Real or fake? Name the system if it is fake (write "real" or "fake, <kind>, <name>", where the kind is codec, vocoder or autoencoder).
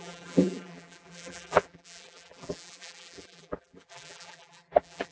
fake, vocoder, BigVGAN v2